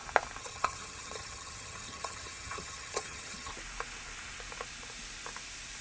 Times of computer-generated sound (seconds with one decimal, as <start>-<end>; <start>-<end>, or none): 0.4-3.5